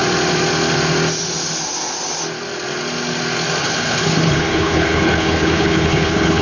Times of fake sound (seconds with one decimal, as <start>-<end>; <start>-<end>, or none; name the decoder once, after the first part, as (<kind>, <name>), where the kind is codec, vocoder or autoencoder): 3.6-6.4 (codec, HILCodec)